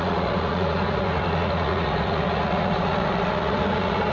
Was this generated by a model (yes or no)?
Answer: yes